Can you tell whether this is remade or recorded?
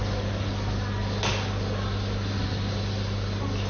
recorded